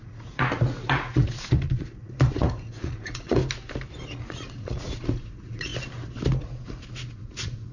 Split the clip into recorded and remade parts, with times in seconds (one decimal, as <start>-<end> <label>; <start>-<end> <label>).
0.0-3.4 remade; 3.4-4.2 recorded; 4.2-5.7 remade; 5.7-6.4 recorded; 6.4-7.7 remade